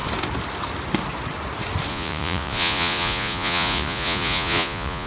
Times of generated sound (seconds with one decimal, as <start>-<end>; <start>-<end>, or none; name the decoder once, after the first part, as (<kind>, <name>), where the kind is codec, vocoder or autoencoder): 1.9-5.1 (vocoder, Vocos)